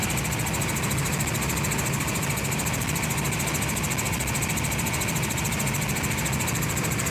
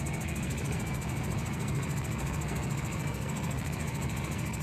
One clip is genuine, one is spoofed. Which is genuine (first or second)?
first